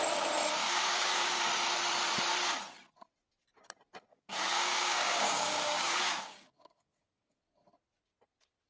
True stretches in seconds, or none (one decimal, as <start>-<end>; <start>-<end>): 0.0-0.6; 1.4-4.1; 7.4-8.7